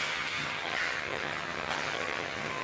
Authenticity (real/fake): fake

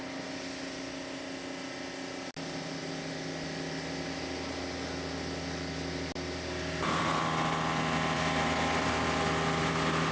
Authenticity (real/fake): real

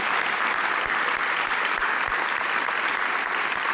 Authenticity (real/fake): real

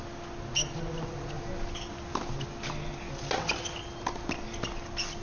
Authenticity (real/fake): real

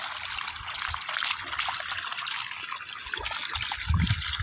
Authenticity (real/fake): real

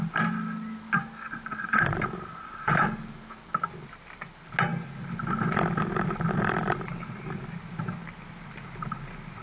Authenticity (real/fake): real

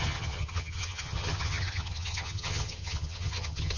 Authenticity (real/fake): fake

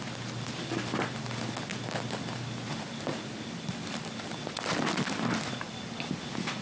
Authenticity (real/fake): real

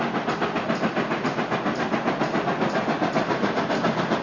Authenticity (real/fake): real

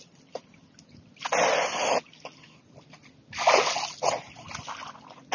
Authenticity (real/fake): real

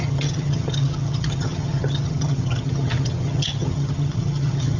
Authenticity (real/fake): fake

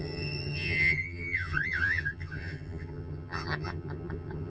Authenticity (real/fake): fake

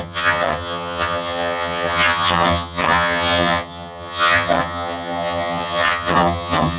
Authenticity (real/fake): fake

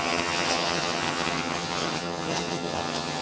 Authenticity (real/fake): fake